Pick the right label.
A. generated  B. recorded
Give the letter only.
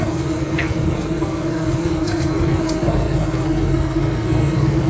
A